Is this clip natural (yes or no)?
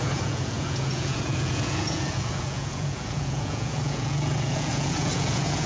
no